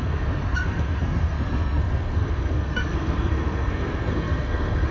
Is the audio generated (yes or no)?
yes